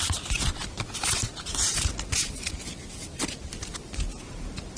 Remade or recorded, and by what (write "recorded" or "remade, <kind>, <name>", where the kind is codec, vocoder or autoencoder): recorded